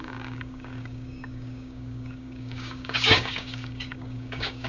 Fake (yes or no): yes